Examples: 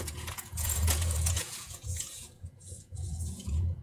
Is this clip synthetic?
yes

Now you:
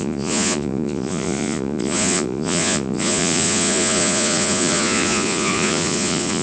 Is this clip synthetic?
yes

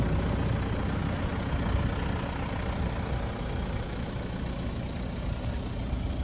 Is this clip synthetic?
no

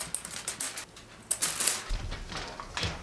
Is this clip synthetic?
no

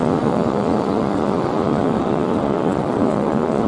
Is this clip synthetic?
yes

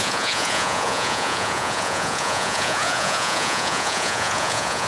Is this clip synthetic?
yes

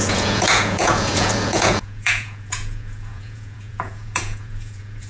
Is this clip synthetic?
yes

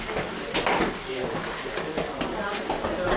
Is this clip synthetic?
no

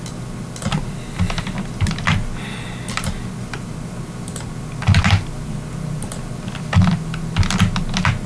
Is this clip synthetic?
no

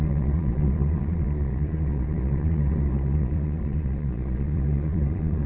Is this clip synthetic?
yes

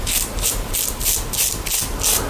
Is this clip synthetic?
no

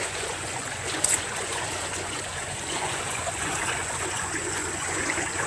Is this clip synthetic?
yes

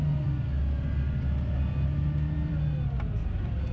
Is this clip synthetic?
no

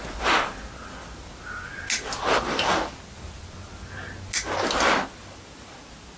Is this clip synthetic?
no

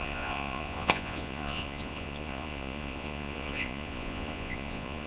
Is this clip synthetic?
yes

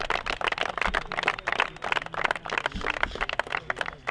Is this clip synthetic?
no